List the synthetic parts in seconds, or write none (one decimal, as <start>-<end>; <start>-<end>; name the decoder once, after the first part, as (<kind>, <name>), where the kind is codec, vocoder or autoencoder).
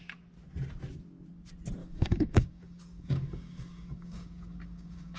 1.8-5.2 (codec, DAC)